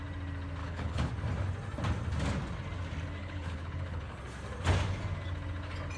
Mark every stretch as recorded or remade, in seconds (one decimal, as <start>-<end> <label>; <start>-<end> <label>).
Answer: 0.0-0.6 recorded; 0.6-1.1 remade; 1.1-3.2 recorded; 3.2-4.2 remade; 4.2-6.0 recorded